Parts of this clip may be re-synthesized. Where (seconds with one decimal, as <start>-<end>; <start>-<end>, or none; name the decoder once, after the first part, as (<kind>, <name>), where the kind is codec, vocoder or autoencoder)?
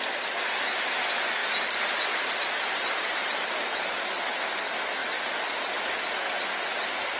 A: 1.4-3.9 (vocoder, BigVGAN v2)